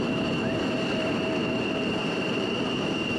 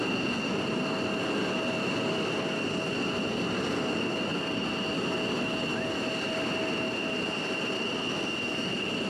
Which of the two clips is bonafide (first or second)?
second